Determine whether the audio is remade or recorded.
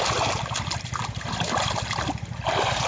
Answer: recorded